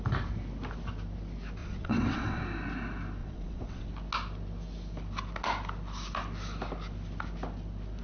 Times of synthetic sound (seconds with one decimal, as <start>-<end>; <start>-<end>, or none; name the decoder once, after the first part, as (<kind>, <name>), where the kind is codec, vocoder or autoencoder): 1.6-2.4 (vocoder, WaveNeXt); 3.2-3.9